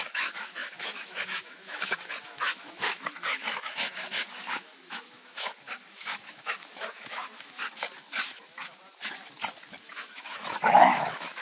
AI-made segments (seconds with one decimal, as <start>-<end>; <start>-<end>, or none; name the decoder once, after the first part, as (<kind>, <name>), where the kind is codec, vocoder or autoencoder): 0.0-7.6 (autoencoder, DAC-VAE); 9.8-11.4

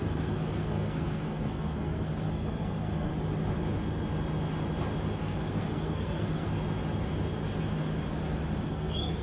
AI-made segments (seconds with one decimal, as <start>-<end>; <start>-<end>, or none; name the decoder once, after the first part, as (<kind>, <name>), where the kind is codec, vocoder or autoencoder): 0.0-3.1 (codec, SNAC); 5.2-6.5; 8.7-9.2

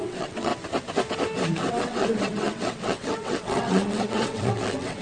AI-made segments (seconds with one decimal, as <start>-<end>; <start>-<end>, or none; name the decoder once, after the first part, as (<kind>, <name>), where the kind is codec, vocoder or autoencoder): 0.0-0.5 (vocoder, WaveNeXt); 1.7-5.0

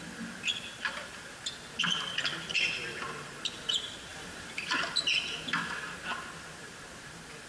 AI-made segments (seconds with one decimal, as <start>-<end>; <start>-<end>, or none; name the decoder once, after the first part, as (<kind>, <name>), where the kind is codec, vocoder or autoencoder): 4.1-4.7 (vocoder, BigVGAN v2); 6.6-7.1

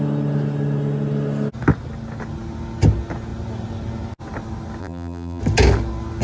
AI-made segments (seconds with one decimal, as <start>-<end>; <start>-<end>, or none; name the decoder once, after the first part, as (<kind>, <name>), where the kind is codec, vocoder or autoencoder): 4.8-5.4 (vocoder, BigVGAN v2)

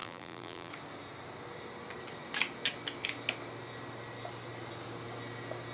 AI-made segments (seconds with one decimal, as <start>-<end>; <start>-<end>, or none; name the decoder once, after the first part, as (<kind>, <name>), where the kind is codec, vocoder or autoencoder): 0.0-0.7 (vocoder, BigVGAN v2)

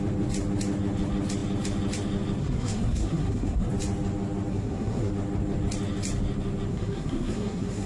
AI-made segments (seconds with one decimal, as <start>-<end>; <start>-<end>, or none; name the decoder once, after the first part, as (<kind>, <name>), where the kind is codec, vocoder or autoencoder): 2.4-3.7 (codec, SNAC); 4.5-5.1; 6.7-7.9

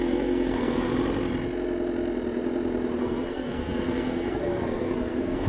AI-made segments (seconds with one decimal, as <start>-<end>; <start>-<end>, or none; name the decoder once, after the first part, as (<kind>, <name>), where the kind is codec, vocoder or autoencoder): 0.0-0.9 (codec, SNAC); 3.0-5.5